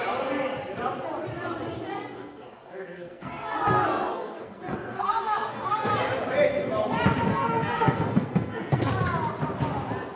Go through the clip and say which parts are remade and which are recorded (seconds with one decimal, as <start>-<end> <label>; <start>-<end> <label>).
0.0-1.9 recorded; 1.9-5.9 remade; 5.9-7.3 recorded; 7.3-8.9 remade; 8.9-10.2 recorded